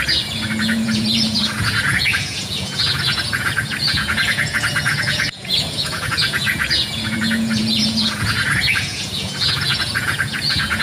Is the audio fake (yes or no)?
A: yes